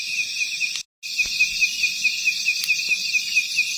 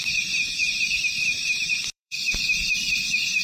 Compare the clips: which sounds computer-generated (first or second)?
second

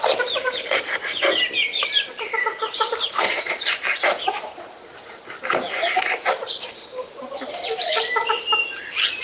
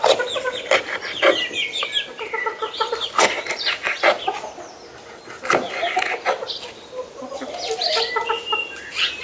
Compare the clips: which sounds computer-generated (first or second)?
first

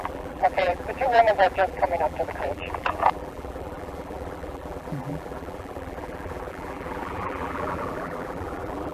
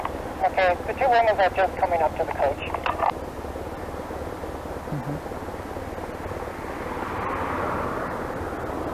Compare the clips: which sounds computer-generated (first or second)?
first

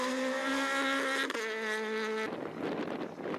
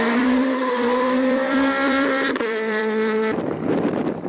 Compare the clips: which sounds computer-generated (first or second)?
second